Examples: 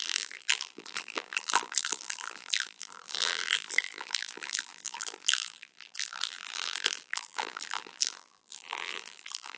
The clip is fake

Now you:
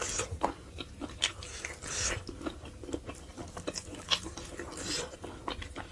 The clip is real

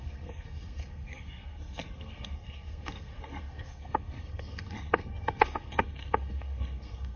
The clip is fake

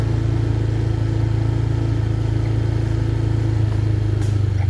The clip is real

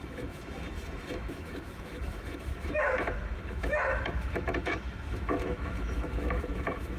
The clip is fake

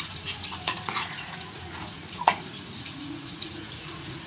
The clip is fake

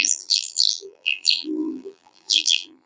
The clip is fake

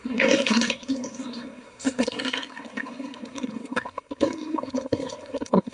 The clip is fake